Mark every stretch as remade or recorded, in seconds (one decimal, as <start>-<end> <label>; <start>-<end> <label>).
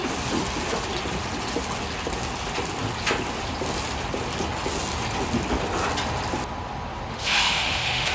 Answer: 0.0-7.1 recorded; 7.1-8.1 remade